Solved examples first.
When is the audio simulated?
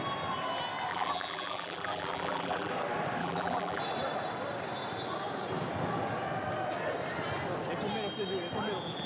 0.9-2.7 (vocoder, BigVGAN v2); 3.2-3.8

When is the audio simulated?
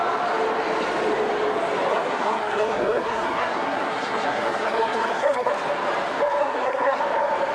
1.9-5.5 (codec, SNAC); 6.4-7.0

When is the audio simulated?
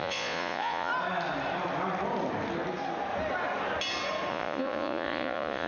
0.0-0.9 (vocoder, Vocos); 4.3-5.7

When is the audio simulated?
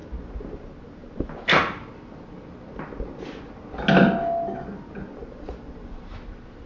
none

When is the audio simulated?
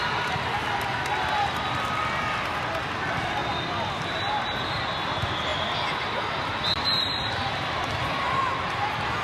3.4-5.1 (vocoder, BigVGAN v2); 5.5-8.6